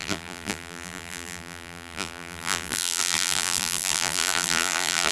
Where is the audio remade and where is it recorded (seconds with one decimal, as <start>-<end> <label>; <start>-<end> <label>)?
0.0-5.1 remade